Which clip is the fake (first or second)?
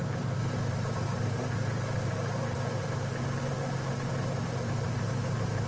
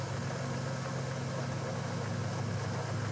first